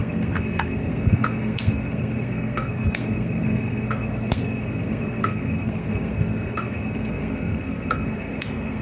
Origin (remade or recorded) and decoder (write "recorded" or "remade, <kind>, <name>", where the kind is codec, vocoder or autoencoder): remade, codec, SNAC